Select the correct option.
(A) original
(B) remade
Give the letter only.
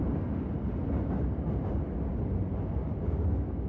A